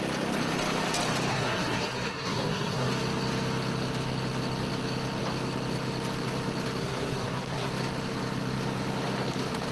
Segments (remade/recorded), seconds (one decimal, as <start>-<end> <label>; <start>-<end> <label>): 0.0-1.3 recorded; 1.3-2.9 remade; 2.9-6.8 recorded; 6.8-7.7 remade; 7.7-9.7 recorded